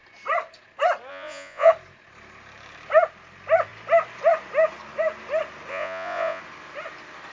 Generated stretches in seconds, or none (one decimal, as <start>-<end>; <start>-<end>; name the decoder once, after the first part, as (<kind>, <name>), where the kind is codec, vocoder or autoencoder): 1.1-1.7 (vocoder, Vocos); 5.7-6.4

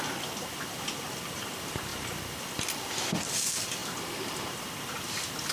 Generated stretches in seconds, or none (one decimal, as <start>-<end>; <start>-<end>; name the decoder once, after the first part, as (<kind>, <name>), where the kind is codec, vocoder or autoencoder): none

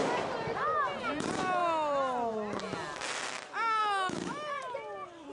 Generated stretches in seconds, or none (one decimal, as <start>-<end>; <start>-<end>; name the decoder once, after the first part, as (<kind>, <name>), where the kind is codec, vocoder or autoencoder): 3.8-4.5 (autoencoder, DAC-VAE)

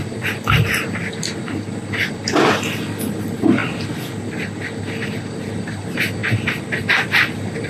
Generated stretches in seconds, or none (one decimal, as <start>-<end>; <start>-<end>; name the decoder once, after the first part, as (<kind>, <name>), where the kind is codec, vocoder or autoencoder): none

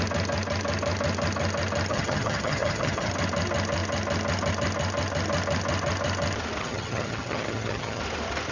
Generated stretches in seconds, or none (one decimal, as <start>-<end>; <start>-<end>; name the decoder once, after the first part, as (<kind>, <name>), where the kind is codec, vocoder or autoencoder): 1.9-3.1 (vocoder, HiFi-GAN); 6.6-8.0

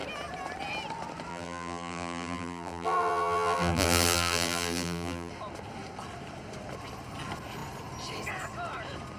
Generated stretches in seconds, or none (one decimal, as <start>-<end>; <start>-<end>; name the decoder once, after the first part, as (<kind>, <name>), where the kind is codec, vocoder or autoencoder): 1.3-5.3 (vocoder, BigVGAN v2)

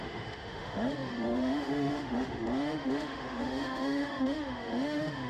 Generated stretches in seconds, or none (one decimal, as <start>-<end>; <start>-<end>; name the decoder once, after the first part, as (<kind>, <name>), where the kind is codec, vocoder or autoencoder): 0.0-5.3 (autoencoder, DAC-VAE)

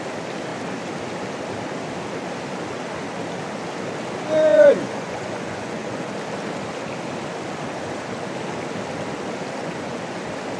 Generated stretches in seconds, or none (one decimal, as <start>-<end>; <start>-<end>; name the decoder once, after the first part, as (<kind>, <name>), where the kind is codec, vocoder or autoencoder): 4.5-6.1 (vocoder, Vocos); 9.6-10.2